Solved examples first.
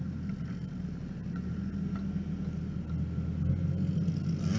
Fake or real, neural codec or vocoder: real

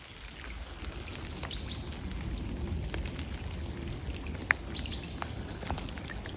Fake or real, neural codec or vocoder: real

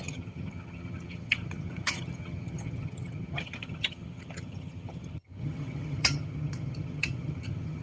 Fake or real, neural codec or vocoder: fake, vocoder, HiFi-GAN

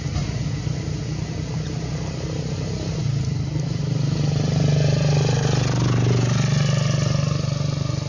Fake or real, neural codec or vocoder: real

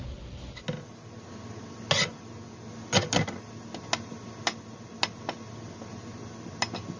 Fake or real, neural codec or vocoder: real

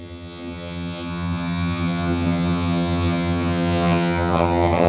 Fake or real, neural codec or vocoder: fake, vocoder, HiFi-GAN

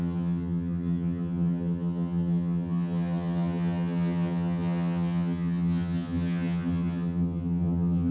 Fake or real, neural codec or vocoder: fake, vocoder, HiFi-GAN